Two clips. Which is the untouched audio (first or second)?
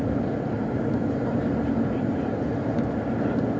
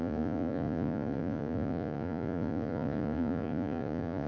first